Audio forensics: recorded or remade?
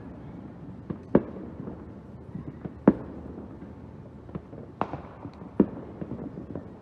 recorded